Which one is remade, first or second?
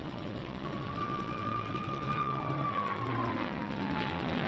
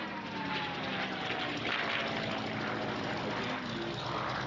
first